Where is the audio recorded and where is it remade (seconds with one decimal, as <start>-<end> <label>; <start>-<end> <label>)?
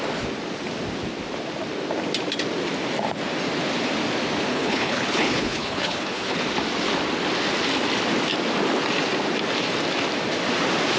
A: 0.0-4.5 recorded; 4.5-6.4 remade; 6.4-11.0 recorded